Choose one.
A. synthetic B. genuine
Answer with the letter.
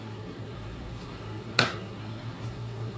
A